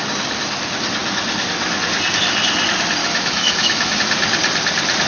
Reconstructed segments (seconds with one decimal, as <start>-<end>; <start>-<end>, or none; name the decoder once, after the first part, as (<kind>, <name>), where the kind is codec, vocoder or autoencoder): 3.0-4.0 (autoencoder, DAC-VAE)